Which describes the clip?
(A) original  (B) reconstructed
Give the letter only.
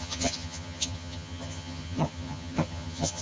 B